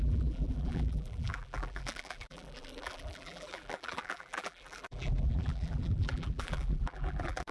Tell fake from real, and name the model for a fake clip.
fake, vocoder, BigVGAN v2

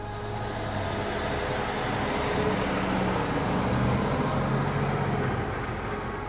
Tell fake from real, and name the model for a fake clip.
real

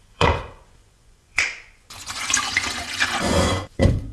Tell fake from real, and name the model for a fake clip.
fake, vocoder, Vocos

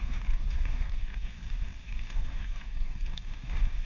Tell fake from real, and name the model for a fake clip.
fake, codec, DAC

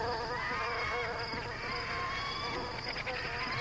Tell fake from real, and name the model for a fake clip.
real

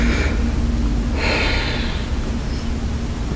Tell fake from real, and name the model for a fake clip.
real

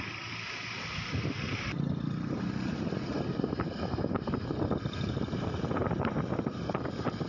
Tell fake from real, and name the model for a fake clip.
fake, vocoder, BigVGAN v2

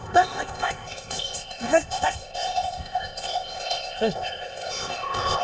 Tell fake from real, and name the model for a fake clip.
fake, codec, ZipCodec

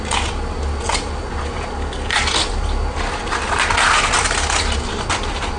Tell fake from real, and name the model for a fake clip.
real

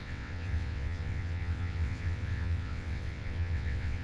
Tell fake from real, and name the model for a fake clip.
fake, vocoder, WaveNeXt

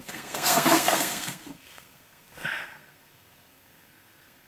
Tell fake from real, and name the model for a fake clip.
fake, codec, SNAC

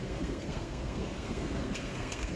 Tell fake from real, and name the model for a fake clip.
fake, codec, SNAC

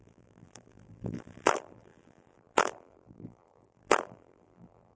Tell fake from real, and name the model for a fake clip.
fake, vocoder, BigVGAN v2